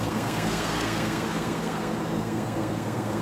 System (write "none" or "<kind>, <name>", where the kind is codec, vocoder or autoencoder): codec, SNAC